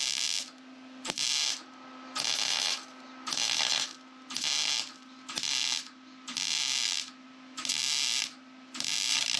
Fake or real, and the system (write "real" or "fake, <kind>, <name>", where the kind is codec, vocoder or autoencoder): real